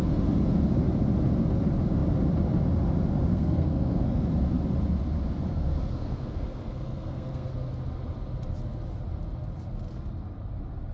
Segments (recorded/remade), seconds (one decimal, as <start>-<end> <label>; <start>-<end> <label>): 0.0-3.3 recorded; 3.3-4.2 remade; 4.2-5.5 recorded; 5.5-7.5 remade; 7.5-10.9 recorded